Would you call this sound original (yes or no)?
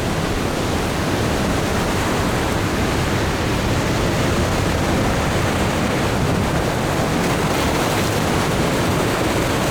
yes